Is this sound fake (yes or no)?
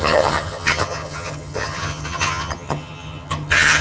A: yes